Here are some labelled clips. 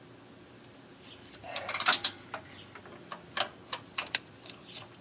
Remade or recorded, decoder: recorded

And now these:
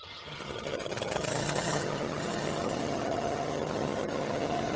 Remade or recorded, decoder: remade, vocoder, HiFi-GAN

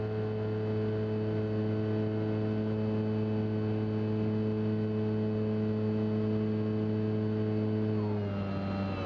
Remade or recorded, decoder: recorded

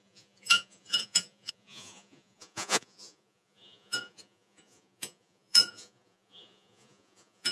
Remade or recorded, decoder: remade, vocoder, Vocos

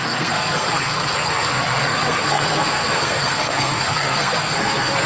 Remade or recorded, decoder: remade, codec, SNAC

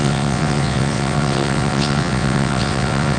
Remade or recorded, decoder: remade, vocoder, WaveNeXt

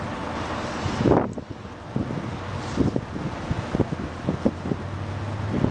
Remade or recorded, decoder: recorded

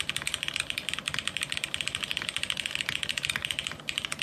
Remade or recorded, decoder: recorded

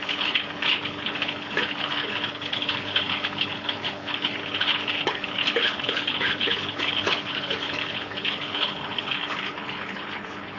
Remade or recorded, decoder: remade, codec, HILCodec